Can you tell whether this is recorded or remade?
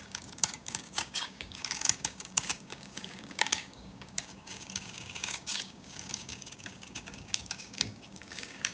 remade